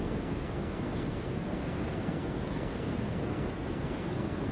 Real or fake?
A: fake